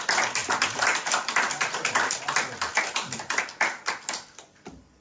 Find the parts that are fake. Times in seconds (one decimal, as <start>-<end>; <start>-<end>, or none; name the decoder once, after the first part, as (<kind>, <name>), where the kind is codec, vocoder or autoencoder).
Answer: 0.4-3.4 (vocoder, BigVGAN v2)